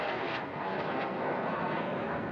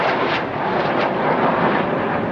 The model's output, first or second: first